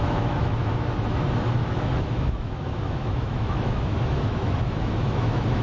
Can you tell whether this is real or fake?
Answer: fake